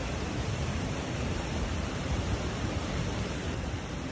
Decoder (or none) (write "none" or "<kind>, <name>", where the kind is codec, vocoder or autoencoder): vocoder, BigVGAN v2